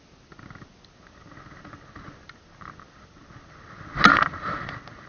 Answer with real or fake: real